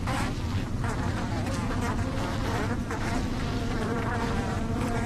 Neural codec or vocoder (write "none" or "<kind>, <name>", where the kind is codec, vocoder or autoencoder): vocoder, BigVGAN v2